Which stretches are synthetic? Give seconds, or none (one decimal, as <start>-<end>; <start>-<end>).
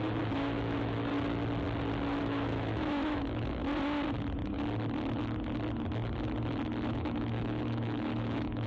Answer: 0.0-1.1; 2.2-3.6; 6.9-8.7